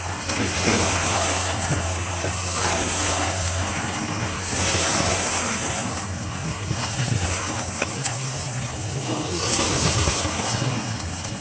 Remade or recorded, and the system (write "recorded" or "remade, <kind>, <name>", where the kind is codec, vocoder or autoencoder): remade, codec, SNAC